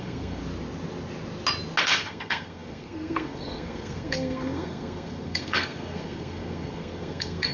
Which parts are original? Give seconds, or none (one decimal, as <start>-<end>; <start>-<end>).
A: 0.4-1.8